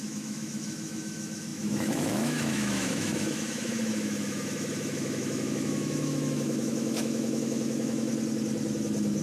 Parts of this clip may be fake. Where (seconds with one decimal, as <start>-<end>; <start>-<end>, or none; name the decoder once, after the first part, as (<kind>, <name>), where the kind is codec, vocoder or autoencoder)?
0.0-8.1 (autoencoder, DAC-VAE)